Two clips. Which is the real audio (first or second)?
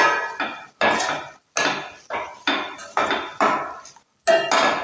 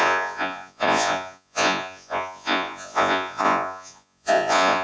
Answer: first